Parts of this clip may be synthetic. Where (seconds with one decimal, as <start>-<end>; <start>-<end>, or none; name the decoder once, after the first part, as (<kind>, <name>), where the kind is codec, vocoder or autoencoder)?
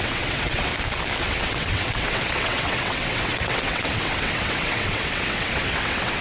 0.0-0.7 (vocoder, WaveNeXt); 1.2-6.2